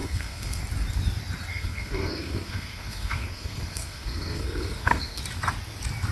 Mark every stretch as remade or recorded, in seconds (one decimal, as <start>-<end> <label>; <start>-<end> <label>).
0.0-0.6 remade; 0.6-1.5 recorded; 1.5-5.2 remade; 5.2-6.1 recorded